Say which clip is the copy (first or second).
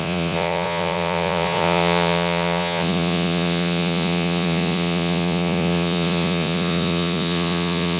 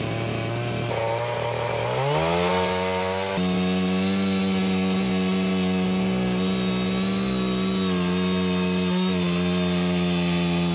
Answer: first